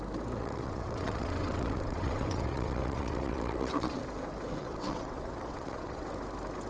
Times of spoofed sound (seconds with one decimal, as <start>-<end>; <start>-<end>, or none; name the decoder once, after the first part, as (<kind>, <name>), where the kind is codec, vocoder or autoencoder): 0.4-4.0 (vocoder, WaveNeXt); 4.6-6.1